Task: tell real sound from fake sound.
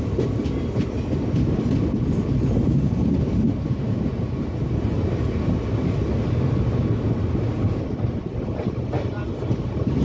real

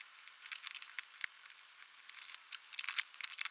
real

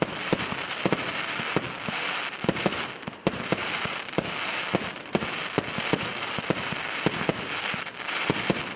real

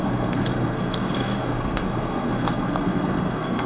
fake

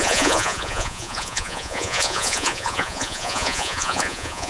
fake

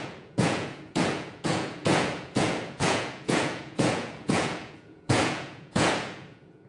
fake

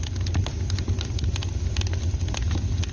real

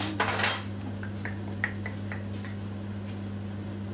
real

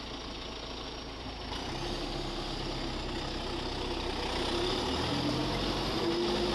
real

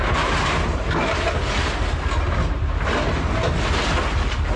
real